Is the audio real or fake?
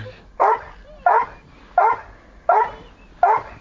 real